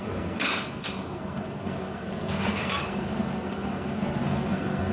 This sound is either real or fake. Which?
fake